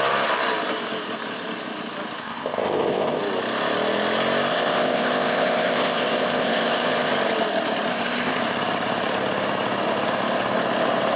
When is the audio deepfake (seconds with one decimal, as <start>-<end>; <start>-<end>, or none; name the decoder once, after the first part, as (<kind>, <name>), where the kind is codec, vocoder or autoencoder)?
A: 2.2-3.2 (codec, ZipCodec); 4.5-7.1; 7.9-8.4